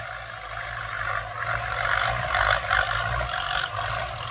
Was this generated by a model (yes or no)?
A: no